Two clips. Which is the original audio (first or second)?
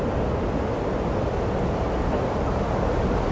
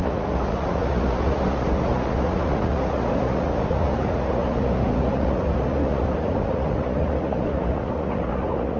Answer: first